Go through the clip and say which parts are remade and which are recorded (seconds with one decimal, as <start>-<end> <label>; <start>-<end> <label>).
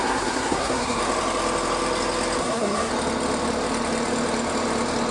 0.0-1.0 remade; 1.0-2.4 recorded; 2.4-2.9 remade; 2.9-5.1 recorded